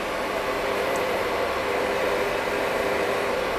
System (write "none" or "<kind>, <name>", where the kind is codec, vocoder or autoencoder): none